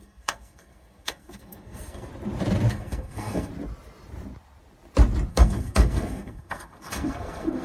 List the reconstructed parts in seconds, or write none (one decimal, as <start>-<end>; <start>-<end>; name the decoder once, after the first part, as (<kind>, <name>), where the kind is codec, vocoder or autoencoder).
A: 0.0-2.1 (codec, SNAC); 2.7-3.5; 5.3-7.6